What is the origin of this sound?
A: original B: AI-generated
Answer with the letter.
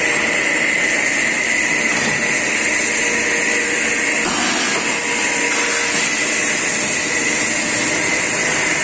A